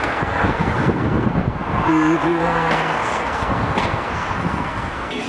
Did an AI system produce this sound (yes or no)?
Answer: yes